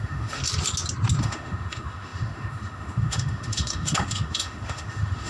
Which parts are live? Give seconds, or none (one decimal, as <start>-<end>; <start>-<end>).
0.4-1.2